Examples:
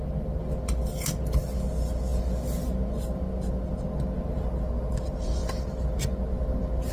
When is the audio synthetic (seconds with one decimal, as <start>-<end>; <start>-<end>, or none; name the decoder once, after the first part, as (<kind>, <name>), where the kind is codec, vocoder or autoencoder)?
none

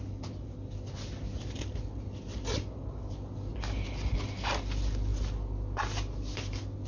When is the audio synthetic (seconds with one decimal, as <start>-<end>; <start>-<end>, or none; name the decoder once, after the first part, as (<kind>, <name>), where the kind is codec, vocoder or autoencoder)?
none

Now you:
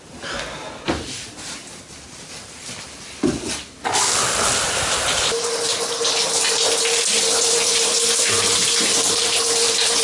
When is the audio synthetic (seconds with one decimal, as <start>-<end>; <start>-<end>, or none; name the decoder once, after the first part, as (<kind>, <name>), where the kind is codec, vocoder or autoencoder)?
none

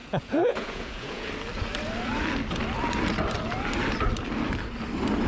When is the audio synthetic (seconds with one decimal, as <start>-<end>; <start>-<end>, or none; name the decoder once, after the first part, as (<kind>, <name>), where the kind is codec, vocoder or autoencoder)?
0.0-1.3 (vocoder, Vocos)